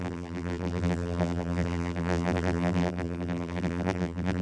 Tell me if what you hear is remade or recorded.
remade